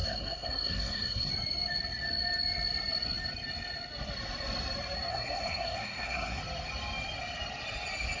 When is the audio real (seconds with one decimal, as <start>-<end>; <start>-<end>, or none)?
1.3-5.1; 6.4-8.2